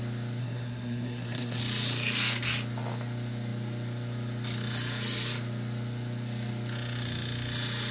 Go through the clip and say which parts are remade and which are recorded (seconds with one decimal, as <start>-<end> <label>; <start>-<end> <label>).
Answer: 0.0-0.4 recorded; 0.4-1.6 remade; 1.6-7.9 recorded